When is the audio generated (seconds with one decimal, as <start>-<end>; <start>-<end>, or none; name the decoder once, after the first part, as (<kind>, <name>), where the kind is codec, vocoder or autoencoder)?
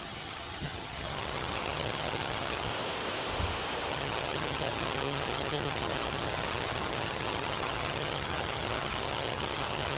0.0-2.7 (vocoder, HiFi-GAN); 3.9-10.0